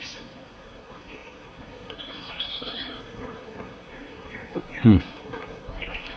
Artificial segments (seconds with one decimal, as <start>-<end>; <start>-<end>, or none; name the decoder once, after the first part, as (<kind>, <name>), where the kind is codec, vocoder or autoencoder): 0.0-6.2 (codec, SNAC)